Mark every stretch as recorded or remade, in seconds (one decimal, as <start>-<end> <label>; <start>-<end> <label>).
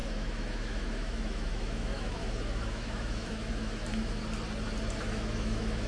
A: 0.0-4.2 remade; 4.2-5.0 recorded; 5.0-5.9 remade